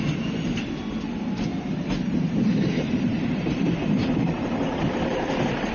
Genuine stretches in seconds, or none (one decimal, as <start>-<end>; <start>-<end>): 0.0-1.5; 4.9-5.7